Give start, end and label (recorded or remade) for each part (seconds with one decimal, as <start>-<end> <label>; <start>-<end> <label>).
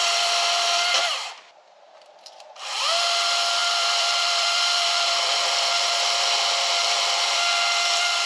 0.0-3.6 recorded; 3.6-7.5 remade; 7.5-8.3 recorded